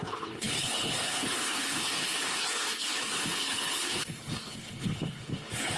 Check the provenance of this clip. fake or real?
fake